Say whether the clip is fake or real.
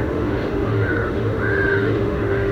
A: fake